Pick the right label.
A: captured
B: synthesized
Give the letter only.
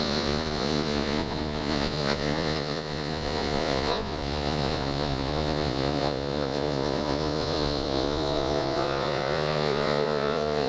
B